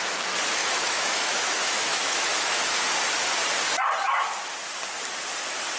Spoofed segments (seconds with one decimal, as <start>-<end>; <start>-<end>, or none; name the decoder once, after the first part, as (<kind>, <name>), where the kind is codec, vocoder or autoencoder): 0.6-2.8 (autoencoder, DAC-VAE)